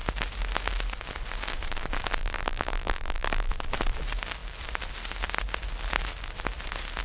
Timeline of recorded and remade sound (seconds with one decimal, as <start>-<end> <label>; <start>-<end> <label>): 0.0-2.2 recorded; 2.2-3.5 remade; 3.5-7.0 recorded